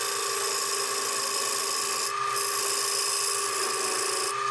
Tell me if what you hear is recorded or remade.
recorded